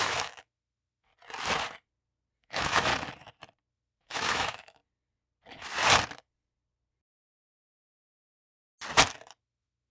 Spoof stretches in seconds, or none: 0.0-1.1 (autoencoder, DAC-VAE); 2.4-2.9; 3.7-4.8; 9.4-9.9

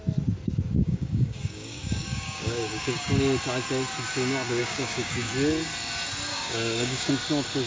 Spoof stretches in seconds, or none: 0.8-3.1 (codec, DAC); 4.6-5.3; 6.3-7.1

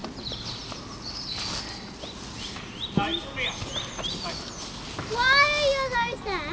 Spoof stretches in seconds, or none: none

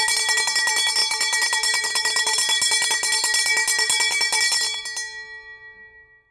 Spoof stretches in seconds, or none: none

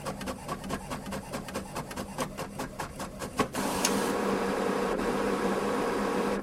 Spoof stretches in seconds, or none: 3.2-6.4 (vocoder, BigVGAN v2)

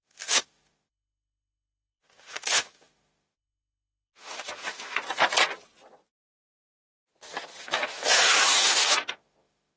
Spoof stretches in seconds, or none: 0.0-5.0 (autoencoder, DAC-VAE); 7.6-9.8

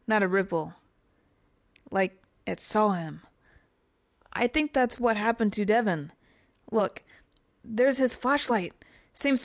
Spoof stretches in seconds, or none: 3.7-4.5 (autoencoder, DAC-VAE)